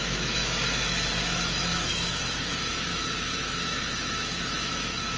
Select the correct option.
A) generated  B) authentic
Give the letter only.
A